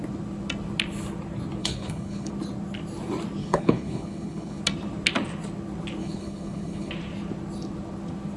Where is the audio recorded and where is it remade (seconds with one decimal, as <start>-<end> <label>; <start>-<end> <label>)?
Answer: 0.0-1.6 recorded; 1.6-2.3 remade; 2.3-3.4 recorded; 3.4-4.6 remade; 4.6-6.0 recorded; 6.0-6.9 remade; 6.9-8.4 recorded